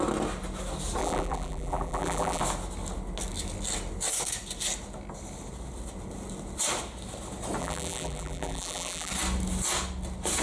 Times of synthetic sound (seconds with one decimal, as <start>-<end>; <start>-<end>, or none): 1.0-2.4; 7.6-9.1